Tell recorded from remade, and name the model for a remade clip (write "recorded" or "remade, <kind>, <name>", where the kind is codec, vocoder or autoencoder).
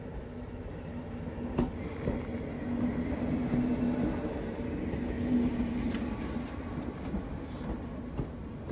recorded